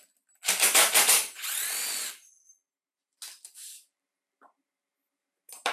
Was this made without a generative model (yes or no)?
yes